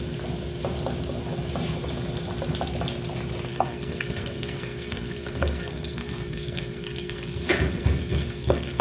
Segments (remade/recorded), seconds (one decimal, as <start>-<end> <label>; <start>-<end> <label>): 0.0-3.5 recorded; 3.5-8.8 remade